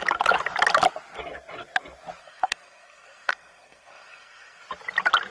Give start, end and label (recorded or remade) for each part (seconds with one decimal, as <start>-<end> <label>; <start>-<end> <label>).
0.0-2.2 recorded; 2.2-4.6 remade; 4.6-5.3 recorded